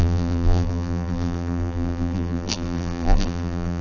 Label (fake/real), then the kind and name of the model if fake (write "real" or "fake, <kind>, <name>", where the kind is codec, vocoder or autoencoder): fake, vocoder, BigVGAN v2